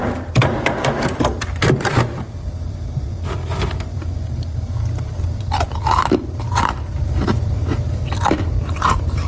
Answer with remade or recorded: remade